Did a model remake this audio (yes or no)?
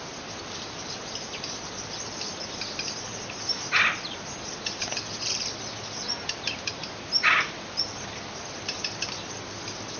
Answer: yes